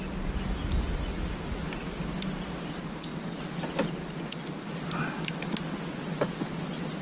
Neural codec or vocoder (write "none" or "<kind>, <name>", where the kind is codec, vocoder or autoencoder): none